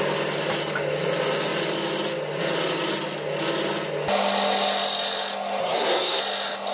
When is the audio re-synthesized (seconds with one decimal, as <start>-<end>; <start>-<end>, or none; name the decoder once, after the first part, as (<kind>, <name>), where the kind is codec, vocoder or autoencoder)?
5.6-6.2 (codec, SNAC)